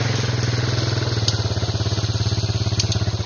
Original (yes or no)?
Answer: yes